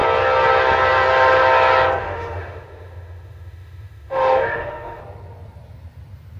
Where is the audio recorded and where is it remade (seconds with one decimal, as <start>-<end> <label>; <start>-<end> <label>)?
0.0-2.0 recorded; 2.0-5.0 remade; 5.0-6.4 recorded